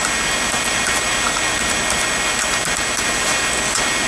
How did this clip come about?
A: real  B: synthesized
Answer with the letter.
A